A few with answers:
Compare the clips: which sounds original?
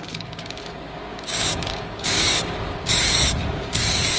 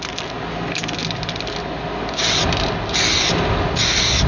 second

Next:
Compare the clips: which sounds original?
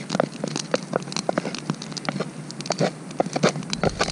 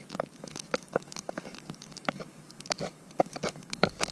first